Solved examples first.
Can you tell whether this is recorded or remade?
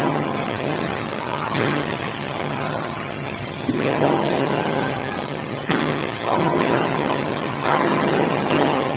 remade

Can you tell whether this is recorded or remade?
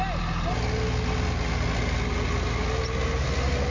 recorded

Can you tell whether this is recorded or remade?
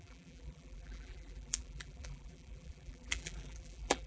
remade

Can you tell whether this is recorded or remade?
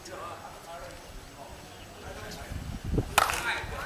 recorded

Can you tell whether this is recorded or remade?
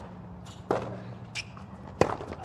recorded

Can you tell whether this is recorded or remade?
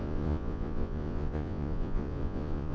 remade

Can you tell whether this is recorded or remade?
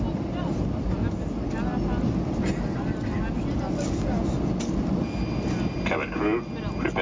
recorded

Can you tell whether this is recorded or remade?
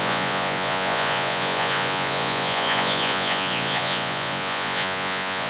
remade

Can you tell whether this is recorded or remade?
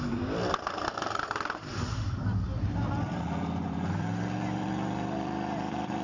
remade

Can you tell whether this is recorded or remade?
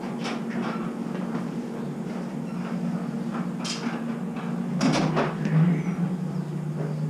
recorded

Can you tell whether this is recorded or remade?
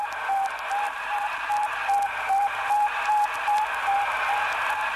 recorded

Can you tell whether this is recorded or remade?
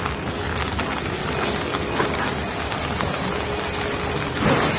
recorded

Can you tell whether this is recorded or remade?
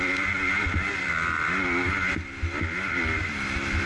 recorded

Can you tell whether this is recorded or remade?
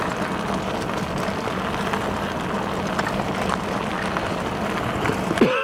recorded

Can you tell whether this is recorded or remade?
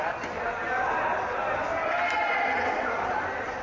recorded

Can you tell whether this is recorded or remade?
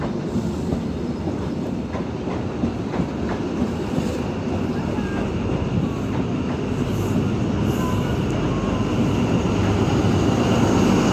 recorded